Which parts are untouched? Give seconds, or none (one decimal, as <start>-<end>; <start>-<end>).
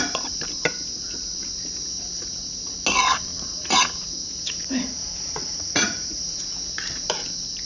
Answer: 0.0-3.3; 6.4-7.7